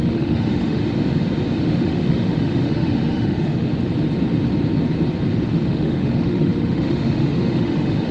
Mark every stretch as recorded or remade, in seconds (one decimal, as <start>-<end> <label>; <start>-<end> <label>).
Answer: 0.0-0.8 remade; 0.8-1.6 recorded; 1.6-3.7 remade; 3.7-5.5 recorded; 5.5-8.1 remade